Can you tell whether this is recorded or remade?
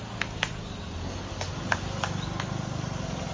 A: recorded